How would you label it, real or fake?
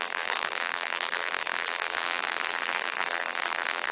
fake